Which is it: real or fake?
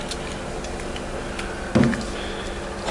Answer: real